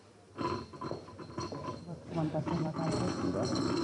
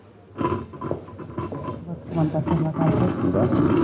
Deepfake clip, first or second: first